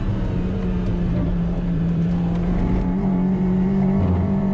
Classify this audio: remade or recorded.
remade